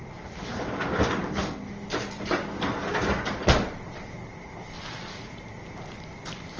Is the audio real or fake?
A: real